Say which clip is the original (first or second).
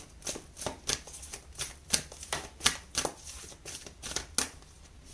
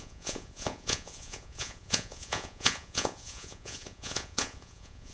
first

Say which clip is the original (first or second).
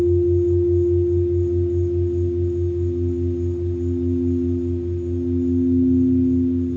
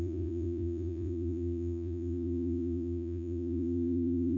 first